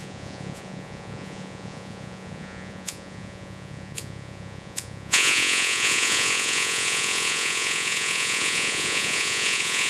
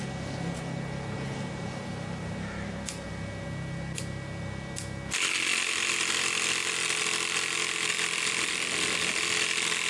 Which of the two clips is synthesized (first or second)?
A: first